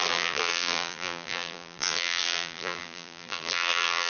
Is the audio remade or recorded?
remade